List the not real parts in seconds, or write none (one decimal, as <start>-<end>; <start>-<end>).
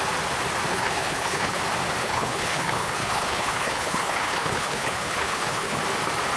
0.7-1.6; 2.0-5.8